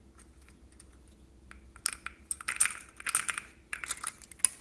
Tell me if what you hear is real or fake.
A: real